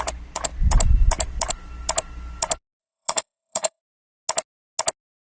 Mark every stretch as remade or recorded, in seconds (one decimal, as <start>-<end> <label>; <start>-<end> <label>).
0.0-2.8 recorded; 2.8-3.8 remade; 3.8-5.3 recorded